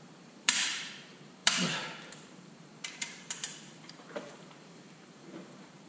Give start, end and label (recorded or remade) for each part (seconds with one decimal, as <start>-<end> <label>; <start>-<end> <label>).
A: 0.0-5.9 remade